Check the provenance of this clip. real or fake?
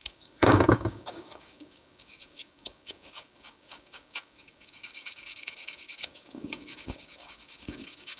fake